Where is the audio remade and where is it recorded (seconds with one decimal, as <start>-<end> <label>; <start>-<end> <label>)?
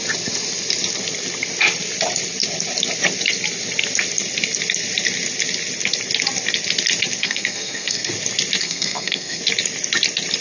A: 0.0-7.2 recorded; 7.2-8.1 remade; 8.1-8.6 recorded; 8.6-9.4 remade; 9.4-10.4 recorded